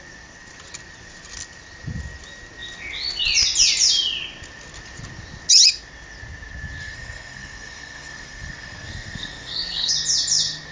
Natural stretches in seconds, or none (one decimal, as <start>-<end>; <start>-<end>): 0.0-6.8; 9.9-10.7